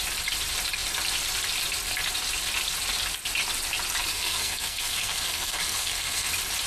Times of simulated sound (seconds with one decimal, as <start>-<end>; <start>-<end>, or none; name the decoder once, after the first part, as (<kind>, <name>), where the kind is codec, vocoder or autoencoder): 4.1-6.3 (codec, SNAC)